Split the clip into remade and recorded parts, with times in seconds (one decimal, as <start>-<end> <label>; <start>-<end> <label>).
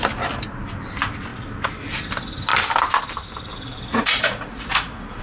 0.0-3.5 recorded; 3.5-5.2 remade